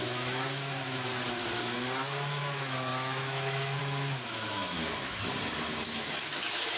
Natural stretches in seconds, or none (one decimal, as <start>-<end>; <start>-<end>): 1.1-2.4; 5.2-5.8